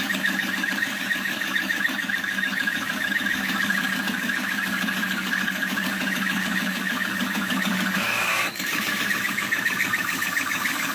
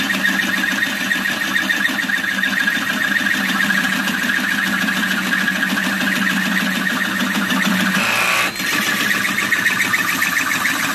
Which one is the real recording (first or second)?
second